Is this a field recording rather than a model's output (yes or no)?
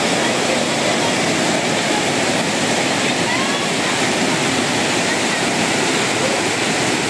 yes